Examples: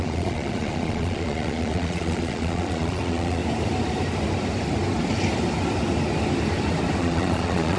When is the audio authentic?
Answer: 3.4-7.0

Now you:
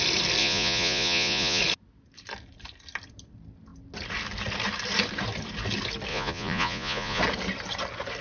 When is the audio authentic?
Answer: 0.0-0.4; 1.6-6.1; 7.2-8.2

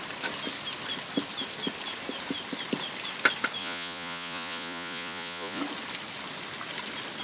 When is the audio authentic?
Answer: 0.0-3.6; 5.6-7.2